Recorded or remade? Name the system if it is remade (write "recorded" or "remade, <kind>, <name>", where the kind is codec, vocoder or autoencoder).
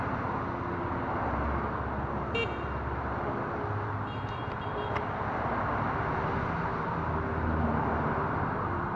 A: recorded